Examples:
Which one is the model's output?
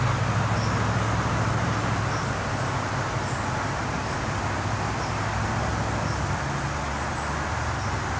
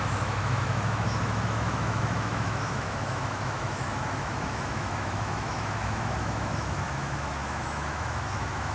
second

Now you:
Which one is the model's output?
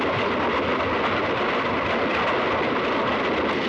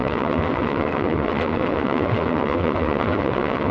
second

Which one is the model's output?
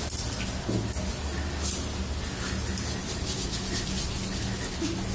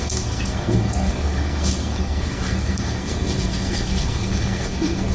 second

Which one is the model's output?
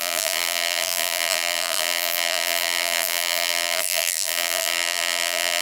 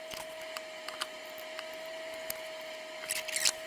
first